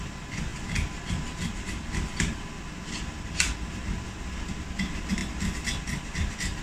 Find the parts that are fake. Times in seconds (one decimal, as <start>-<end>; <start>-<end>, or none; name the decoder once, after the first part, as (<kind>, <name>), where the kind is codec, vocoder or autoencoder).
none